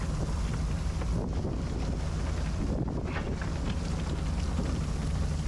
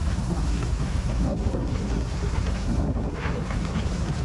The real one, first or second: first